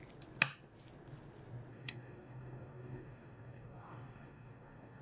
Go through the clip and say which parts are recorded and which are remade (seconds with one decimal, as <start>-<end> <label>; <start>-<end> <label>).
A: 0.0-1.7 recorded; 1.7-5.0 remade